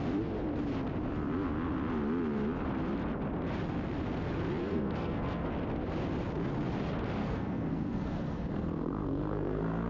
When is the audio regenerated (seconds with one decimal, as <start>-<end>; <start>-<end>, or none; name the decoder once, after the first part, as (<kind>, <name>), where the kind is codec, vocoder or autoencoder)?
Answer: 4.6-5.5 (codec, SNAC); 7.2-9.9